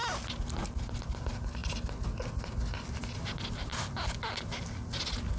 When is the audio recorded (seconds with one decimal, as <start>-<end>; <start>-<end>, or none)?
0.0-5.4